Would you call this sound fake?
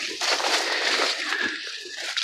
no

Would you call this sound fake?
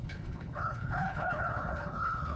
yes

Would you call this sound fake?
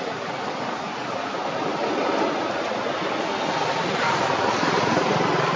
no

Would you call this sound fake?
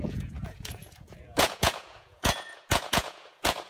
yes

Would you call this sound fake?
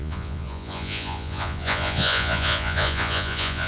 yes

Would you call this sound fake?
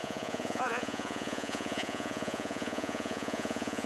yes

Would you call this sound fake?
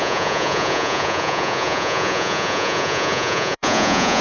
yes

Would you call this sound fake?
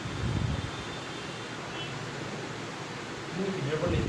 no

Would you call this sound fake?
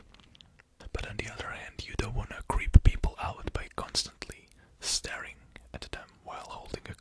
no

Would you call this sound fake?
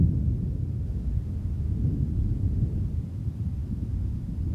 no